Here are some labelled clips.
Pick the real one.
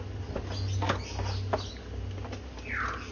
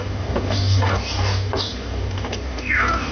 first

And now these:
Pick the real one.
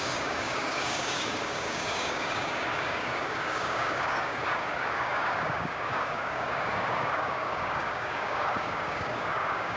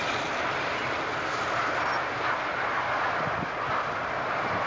second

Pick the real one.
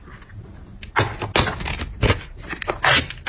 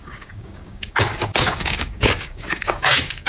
first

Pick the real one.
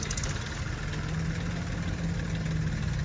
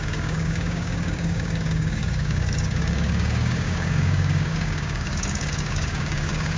first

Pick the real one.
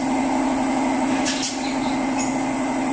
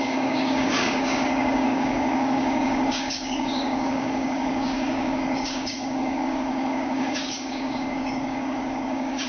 first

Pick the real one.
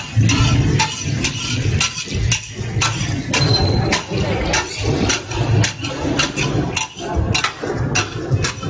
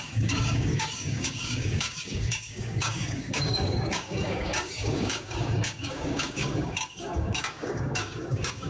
first